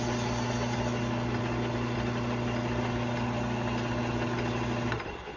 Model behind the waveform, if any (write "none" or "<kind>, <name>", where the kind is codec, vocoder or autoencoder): none